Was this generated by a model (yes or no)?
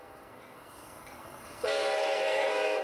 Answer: yes